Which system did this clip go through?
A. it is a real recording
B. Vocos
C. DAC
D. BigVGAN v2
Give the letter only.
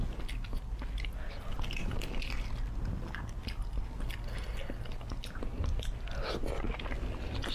A